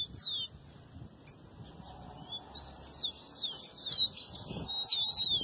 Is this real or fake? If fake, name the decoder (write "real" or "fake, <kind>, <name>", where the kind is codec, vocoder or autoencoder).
real